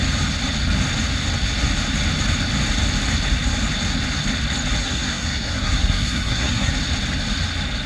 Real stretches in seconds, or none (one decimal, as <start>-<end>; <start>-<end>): 0.0-4.8; 6.7-7.9